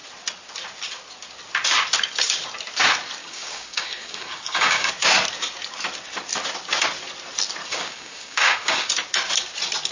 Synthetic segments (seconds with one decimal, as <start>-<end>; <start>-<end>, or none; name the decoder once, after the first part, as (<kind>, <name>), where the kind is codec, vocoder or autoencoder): 3.2-4.9 (codec, DAC); 7.6-8.9